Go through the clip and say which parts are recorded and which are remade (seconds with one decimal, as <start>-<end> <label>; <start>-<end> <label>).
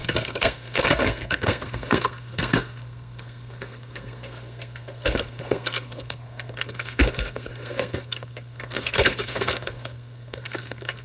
0.0-11.0 remade